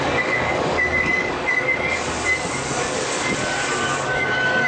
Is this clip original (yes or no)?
no